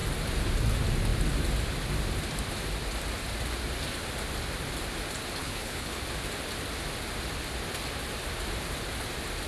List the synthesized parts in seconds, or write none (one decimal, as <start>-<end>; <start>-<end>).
5.4-6.0